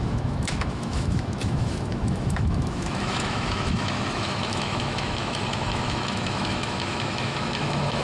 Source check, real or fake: fake